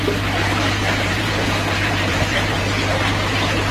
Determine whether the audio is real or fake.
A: fake